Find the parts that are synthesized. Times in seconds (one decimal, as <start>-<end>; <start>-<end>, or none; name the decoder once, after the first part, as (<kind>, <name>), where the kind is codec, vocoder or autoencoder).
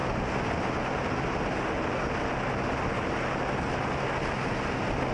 none